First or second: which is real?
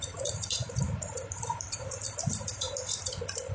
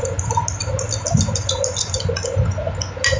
second